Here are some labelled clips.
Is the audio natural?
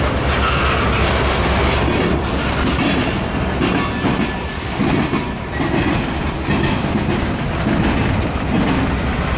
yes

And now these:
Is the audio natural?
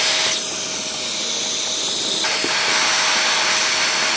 yes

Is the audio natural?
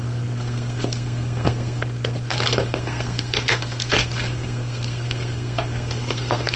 no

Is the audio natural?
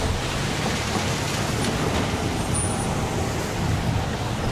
yes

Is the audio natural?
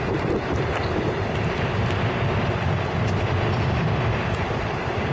yes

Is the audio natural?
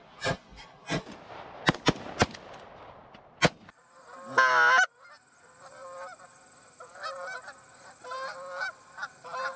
yes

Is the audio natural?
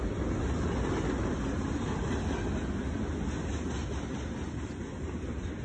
yes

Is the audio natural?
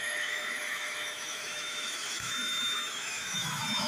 no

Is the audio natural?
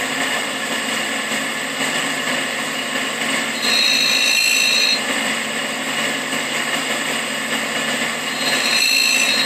no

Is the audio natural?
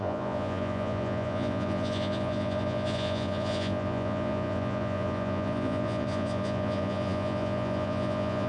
no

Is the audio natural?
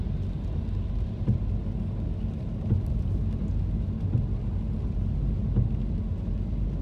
yes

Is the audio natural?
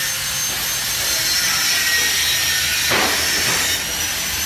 yes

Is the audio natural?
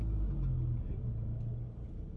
yes